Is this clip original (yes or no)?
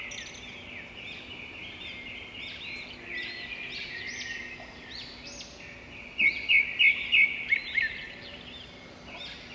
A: yes